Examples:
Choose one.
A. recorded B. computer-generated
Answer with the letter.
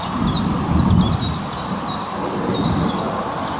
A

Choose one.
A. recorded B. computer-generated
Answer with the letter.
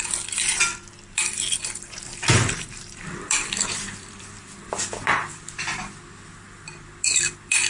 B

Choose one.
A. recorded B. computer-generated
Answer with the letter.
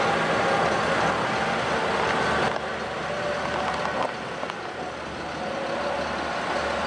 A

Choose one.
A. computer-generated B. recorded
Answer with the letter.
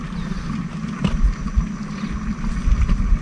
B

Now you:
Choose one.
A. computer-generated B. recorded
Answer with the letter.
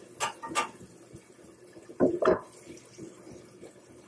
B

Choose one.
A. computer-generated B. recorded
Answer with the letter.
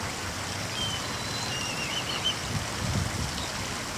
B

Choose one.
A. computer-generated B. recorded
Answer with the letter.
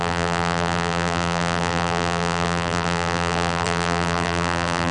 A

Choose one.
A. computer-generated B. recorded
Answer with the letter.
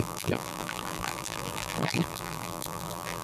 A